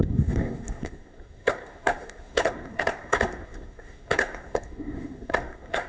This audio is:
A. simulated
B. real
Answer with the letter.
A